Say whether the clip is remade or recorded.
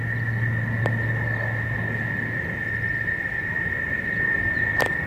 recorded